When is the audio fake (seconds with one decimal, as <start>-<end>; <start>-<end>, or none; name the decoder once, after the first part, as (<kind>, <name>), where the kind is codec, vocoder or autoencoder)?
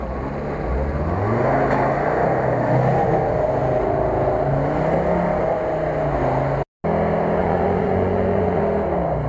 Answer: 7.4-8.6 (vocoder, Vocos)